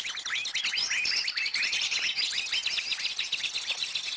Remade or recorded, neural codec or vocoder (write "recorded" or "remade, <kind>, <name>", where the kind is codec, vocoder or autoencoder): recorded